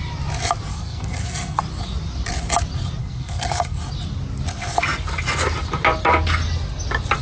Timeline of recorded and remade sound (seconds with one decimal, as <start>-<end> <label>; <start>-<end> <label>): 0.0-0.7 recorded; 0.7-1.6 remade; 1.6-3.0 recorded; 3.0-3.8 remade; 3.8-7.2 recorded